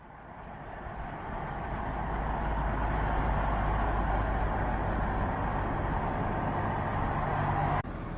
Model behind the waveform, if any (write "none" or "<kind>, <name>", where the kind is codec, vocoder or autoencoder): none